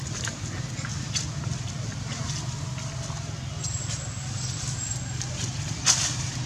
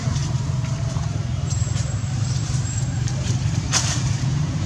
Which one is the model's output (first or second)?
second